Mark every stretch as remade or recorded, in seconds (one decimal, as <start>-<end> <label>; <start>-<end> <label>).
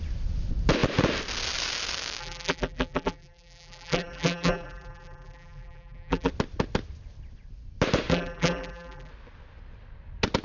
0.0-2.2 recorded; 2.2-6.3 remade; 6.3-8.1 recorded; 8.1-9.1 remade; 9.1-10.4 recorded